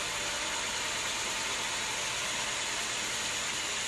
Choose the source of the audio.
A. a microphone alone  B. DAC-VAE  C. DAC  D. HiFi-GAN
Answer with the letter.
A